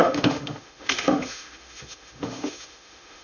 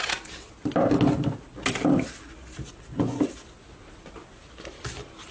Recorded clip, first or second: second